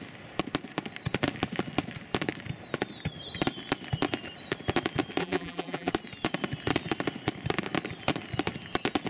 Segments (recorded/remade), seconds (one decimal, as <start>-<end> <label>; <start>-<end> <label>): 0.0-5.2 recorded; 5.2-5.9 remade; 5.9-9.1 recorded